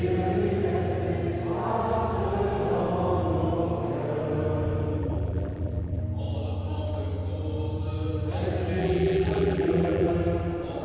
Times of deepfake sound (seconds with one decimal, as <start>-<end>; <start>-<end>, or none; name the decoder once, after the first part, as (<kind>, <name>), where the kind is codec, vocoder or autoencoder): 5.0-6.0 (vocoder, BigVGAN v2); 8.8-10.1